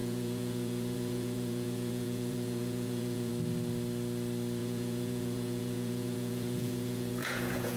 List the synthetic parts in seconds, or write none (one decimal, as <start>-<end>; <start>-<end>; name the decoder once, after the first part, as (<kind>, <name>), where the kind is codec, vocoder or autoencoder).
0.0-3.3 (vocoder, Vocos); 4.6-7.8